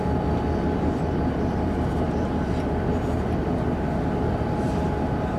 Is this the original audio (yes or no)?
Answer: yes